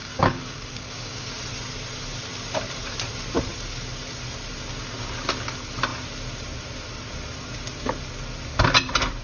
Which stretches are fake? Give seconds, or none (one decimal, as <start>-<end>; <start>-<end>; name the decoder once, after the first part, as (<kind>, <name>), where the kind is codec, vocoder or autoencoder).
0.0-1.3 (codec, DAC)